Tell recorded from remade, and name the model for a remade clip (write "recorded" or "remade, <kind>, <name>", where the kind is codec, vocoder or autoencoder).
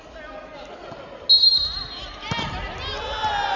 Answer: recorded